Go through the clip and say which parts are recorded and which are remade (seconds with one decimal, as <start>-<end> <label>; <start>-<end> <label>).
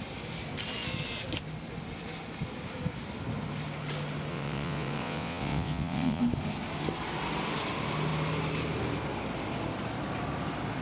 0.0-4.3 recorded; 4.3-6.2 remade; 6.2-10.8 recorded